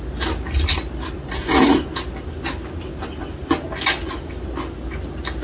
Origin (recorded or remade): recorded